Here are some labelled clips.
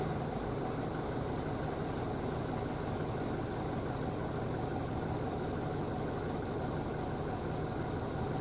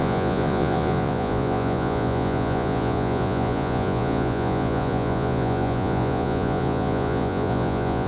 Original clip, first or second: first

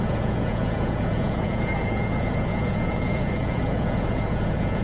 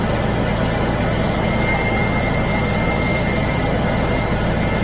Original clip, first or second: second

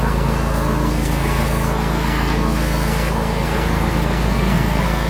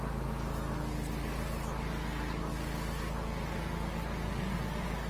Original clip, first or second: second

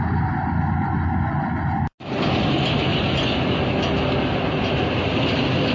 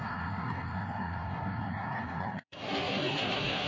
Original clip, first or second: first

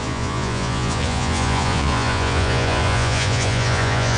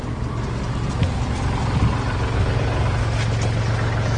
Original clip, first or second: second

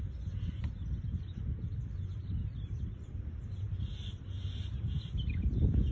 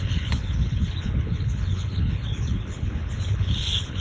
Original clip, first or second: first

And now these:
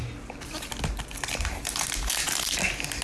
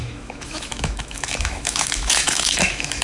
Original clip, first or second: first